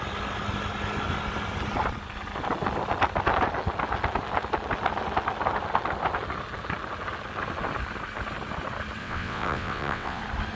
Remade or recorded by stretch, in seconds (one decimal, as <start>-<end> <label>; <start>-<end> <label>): 0.0-9.0 recorded; 9.0-10.2 remade; 10.2-10.6 recorded